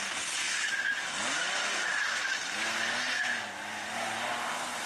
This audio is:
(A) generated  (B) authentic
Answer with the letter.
B